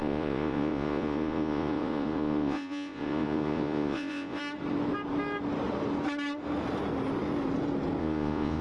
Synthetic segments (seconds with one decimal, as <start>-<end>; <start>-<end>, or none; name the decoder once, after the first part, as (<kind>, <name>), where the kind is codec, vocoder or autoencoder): 0.0-4.4 (vocoder, Vocos); 8.0-8.6